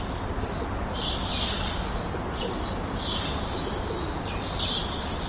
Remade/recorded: recorded